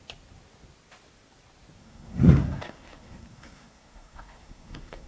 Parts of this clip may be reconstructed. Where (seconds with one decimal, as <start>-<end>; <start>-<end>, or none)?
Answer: 1.8-5.1